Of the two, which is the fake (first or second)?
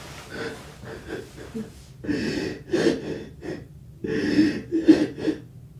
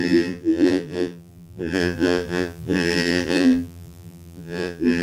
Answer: second